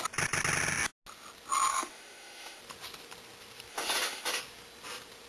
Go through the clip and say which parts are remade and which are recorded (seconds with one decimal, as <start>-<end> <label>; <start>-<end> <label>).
0.0-1.7 recorded; 1.7-2.6 remade; 2.6-3.7 recorded; 3.7-4.4 remade; 4.4-5.3 recorded